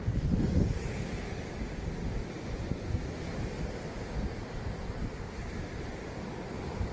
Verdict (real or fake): real